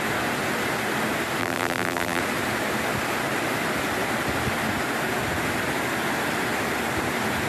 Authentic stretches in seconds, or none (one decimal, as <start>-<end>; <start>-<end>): 0.0-1.4; 2.2-7.5